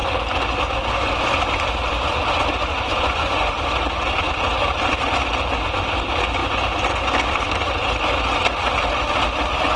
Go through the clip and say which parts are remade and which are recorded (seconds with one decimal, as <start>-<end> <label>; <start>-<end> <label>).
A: 0.0-2.7 recorded; 2.7-3.5 remade; 3.5-9.8 recorded